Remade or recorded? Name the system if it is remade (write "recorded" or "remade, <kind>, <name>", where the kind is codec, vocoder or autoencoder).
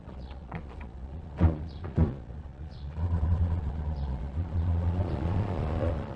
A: remade, vocoder, Vocos